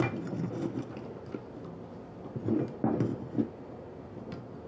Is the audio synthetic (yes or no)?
no